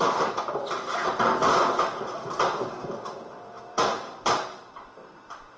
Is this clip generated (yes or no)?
yes